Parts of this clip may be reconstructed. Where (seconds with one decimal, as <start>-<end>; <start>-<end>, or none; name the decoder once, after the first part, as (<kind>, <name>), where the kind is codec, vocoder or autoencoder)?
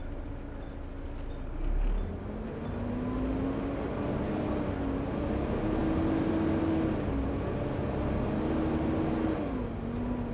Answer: none